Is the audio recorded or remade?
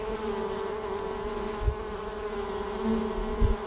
recorded